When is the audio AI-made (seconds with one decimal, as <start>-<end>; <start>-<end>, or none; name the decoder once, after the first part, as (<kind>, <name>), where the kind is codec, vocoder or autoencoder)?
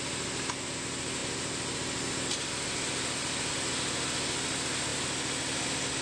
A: none